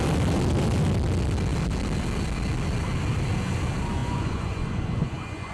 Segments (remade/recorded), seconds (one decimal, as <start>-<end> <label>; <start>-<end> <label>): 0.0-4.0 recorded; 4.0-5.5 remade